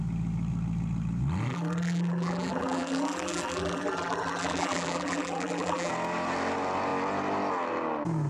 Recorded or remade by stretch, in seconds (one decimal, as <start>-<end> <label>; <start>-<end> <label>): 0.0-1.5 recorded; 1.5-5.9 remade; 5.9-8.3 recorded